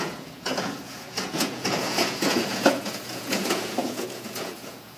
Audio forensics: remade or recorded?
remade